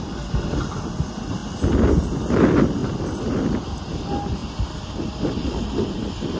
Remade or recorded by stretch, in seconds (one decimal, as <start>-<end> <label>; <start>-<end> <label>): 0.0-6.4 recorded